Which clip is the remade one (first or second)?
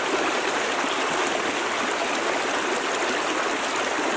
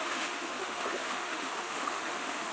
second